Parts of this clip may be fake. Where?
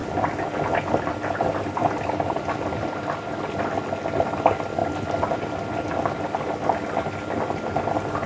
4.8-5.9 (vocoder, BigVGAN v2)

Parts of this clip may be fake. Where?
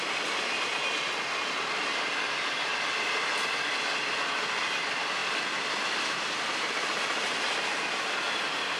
0.0-0.7 (vocoder, BigVGAN v2); 1.8-2.7; 3.2-8.8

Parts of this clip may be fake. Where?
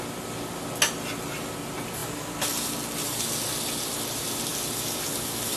none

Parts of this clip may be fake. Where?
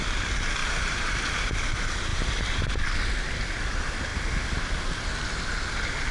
0.6-1.5 (vocoder, BigVGAN v2)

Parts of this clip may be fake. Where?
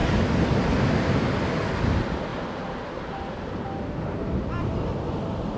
none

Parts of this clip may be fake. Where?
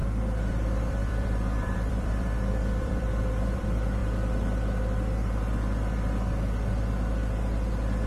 0.5-4.0 (vocoder, BigVGAN v2)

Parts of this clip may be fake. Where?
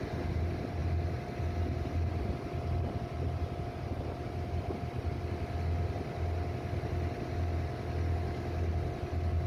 none